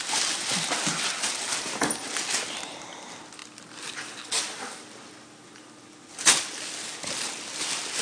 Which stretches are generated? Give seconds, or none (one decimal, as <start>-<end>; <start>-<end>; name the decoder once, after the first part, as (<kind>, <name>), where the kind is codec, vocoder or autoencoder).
none